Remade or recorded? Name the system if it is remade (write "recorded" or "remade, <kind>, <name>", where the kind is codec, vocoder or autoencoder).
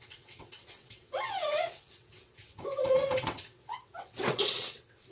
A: remade, vocoder, WaveNeXt